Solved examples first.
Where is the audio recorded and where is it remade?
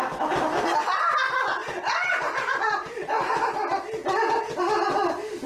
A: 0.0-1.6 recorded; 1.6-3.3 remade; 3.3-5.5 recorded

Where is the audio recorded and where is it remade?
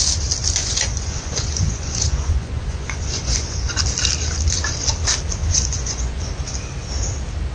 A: 0.0-0.6 recorded; 0.6-3.8 remade; 3.8-5.4 recorded; 5.4-6.3 remade; 6.3-7.5 recorded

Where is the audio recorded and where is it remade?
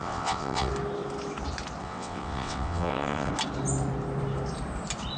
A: 0.0-0.7 remade; 0.7-1.8 recorded; 1.8-3.3 remade; 3.3-5.2 recorded